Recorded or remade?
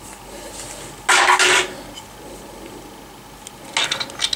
recorded